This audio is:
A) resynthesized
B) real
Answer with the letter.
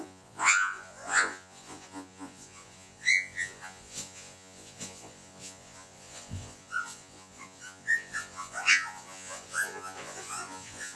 A